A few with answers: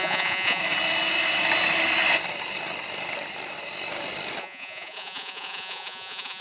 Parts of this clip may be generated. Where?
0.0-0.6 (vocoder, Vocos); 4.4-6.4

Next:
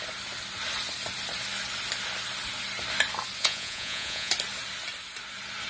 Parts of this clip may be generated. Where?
3.4-4.3 (vocoder, Vocos)

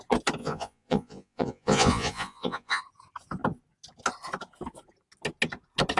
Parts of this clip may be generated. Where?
0.4-2.8 (vocoder, Vocos)

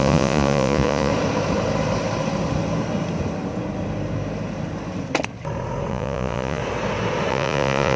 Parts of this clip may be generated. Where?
0.0-1.1 (vocoder, Vocos); 5.9-6.6; 7.3-8.0

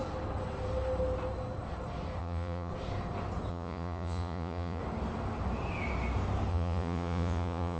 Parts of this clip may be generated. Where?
2.2-2.7 (vocoder, Vocos); 3.5-4.8; 6.5-7.8